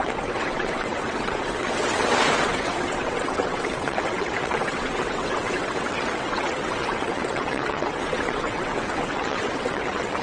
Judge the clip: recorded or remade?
remade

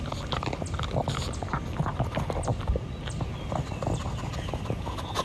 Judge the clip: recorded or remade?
recorded